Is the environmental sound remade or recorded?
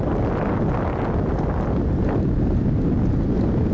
recorded